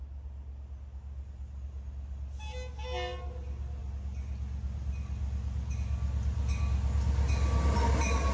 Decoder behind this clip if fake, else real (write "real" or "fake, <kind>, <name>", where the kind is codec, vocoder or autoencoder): real